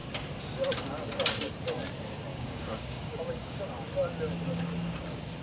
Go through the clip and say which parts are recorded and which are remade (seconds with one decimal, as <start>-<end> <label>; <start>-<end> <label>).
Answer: 0.0-2.3 recorded; 2.3-3.6 remade; 3.6-5.4 recorded